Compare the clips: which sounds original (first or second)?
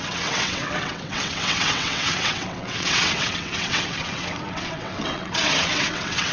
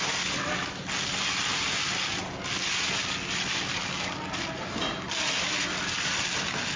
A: second